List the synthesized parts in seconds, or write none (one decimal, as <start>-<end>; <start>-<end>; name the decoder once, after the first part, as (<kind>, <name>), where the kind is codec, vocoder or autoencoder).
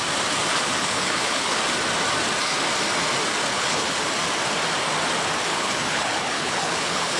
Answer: 0.5-1.6 (codec, HILCodec); 3.5-4.1; 5.5-7.2